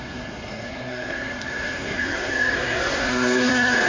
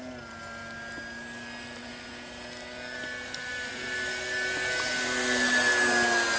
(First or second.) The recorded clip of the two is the second